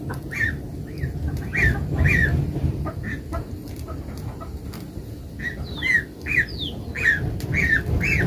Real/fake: real